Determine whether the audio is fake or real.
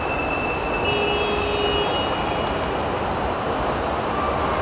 real